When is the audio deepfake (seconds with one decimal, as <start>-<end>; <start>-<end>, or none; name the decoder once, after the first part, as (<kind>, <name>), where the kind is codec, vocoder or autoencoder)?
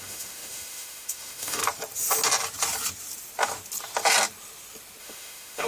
0.0-1.6 (autoencoder, DAC-VAE); 5.0-5.7